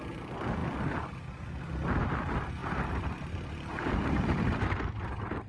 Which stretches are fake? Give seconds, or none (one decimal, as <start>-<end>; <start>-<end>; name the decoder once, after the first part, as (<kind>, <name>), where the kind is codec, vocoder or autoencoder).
2.6-4.2 (vocoder, BigVGAN v2)